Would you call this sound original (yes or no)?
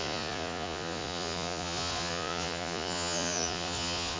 no